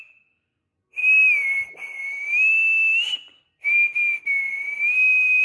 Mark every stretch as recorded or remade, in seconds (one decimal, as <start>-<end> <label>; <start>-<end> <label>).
0.0-5.4 recorded